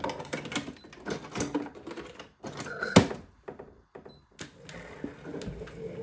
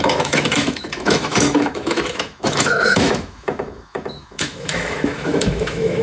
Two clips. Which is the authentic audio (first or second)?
first